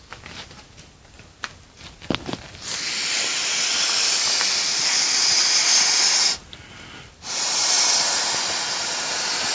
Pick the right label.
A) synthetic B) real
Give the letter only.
B